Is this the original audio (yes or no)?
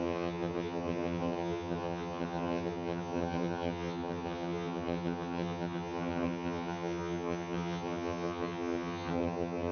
no